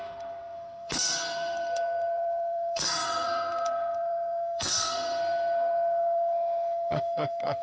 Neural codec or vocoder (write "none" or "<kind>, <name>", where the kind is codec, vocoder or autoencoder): codec, SNAC